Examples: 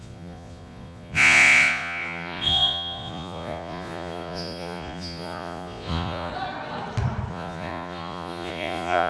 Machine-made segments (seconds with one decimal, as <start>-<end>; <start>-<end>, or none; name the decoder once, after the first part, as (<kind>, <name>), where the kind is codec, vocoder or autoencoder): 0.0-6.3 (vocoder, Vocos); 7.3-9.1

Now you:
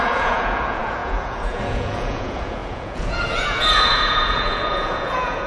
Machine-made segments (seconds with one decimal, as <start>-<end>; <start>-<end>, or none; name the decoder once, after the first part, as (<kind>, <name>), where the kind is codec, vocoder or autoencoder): 0.0-5.5 (vocoder, Vocos)

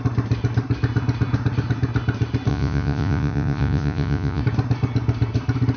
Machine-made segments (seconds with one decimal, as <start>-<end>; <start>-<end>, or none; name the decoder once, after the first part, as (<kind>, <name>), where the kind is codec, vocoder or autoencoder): 2.5-4.4 (vocoder, Vocos)

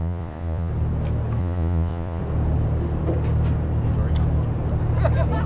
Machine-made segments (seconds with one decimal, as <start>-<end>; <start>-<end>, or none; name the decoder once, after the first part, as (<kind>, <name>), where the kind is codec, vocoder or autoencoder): 0.0-0.7 (vocoder, Vocos); 1.4-2.2